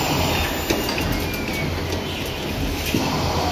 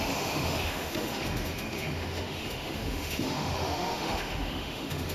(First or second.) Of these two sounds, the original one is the first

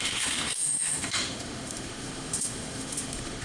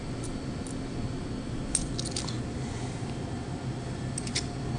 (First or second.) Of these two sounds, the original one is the second